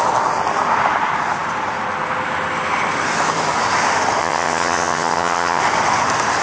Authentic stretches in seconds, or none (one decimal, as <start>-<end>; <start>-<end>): 0.0-4.2; 5.6-6.4